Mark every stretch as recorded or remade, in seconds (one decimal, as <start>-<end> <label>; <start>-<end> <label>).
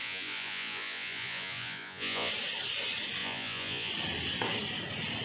0.0-2.3 remade; 2.3-3.2 recorded; 3.2-3.9 remade; 3.9-5.2 recorded